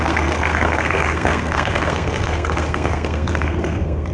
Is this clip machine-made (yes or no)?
yes